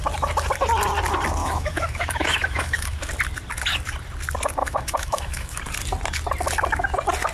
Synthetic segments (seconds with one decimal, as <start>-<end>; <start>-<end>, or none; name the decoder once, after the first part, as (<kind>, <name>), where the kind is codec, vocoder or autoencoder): 1.4-3.1 (autoencoder, DAC-VAE); 4.6-5.6